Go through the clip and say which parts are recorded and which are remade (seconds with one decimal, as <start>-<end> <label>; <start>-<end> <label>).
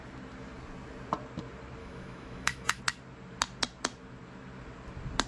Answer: 0.0-1.8 recorded; 1.8-2.8 remade; 2.8-5.3 recorded